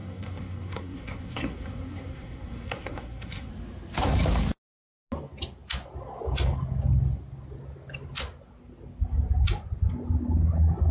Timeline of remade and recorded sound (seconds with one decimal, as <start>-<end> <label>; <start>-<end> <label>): 0.0-3.5 remade; 3.5-10.9 recorded